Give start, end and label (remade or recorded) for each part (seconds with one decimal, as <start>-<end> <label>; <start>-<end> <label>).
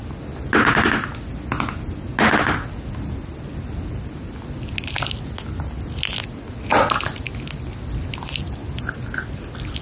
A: 0.0-9.8 recorded